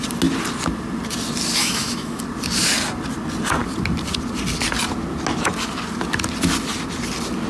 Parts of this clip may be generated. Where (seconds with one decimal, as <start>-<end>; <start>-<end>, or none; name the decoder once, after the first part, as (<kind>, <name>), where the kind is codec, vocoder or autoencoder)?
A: 1.6-2.2 (autoencoder, DAC-VAE)